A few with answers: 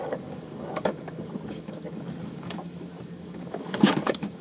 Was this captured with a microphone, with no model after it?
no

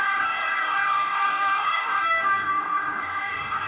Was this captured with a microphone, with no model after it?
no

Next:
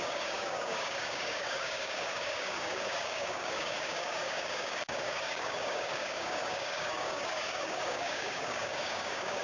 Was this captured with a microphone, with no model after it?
no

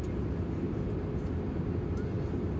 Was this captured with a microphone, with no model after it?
yes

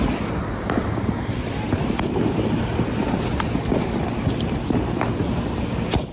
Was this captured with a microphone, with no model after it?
yes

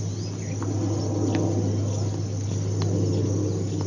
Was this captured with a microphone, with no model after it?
yes